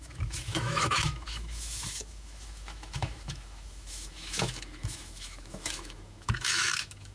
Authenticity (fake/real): fake